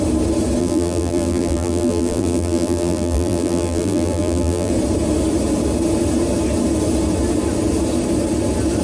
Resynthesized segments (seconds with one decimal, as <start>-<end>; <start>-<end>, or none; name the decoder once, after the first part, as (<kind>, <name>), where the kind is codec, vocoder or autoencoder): 0.6-4.7 (vocoder, BigVGAN v2)